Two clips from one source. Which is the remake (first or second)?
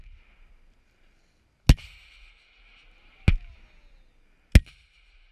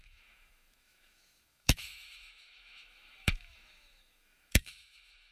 second